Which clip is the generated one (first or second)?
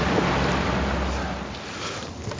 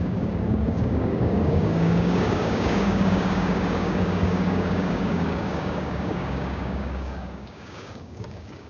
second